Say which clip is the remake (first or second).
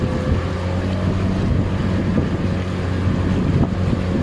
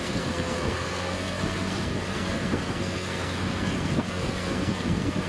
second